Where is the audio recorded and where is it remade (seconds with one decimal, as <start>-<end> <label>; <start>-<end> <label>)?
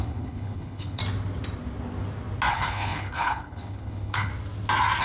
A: 0.0-1.0 remade; 1.0-2.5 recorded; 2.5-4.3 remade; 4.3-5.0 recorded